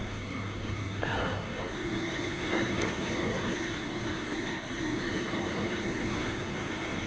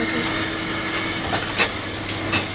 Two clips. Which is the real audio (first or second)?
second